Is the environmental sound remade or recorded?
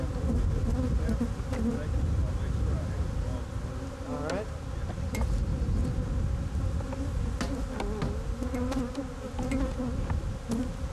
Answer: recorded